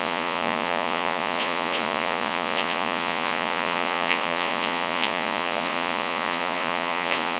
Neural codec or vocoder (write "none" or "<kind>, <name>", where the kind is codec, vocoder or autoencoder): vocoder, Vocos